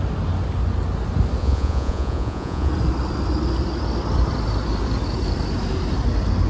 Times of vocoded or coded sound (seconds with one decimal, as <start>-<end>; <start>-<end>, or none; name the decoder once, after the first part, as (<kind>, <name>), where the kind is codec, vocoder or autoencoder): 1.4-2.7 (vocoder, Vocos)